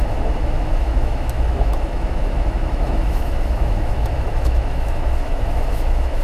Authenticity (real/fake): fake